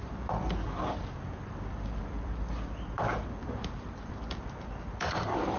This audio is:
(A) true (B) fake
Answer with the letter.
B